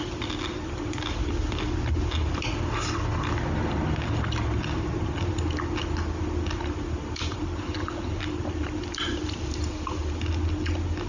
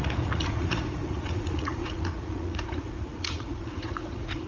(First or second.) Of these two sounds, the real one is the first